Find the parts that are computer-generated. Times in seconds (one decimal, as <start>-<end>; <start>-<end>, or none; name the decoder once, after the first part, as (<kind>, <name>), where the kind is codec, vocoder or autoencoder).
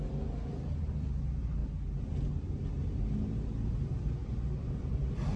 none